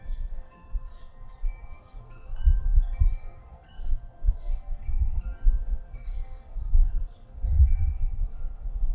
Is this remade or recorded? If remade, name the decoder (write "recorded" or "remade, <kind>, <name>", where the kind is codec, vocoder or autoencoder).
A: remade, codec, SNAC